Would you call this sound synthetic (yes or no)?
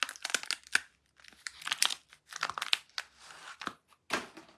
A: no